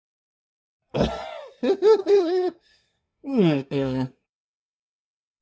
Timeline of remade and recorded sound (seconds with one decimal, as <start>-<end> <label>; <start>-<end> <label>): 0.0-2.0 recorded; 2.0-5.4 remade